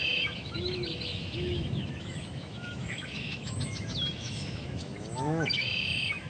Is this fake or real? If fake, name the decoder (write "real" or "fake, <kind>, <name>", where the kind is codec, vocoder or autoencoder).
fake, autoencoder, DAC-VAE